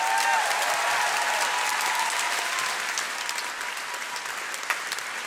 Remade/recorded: recorded